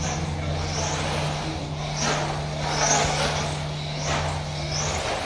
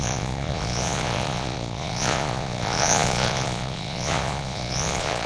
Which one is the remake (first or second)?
second